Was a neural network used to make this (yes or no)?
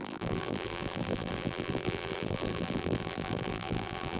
yes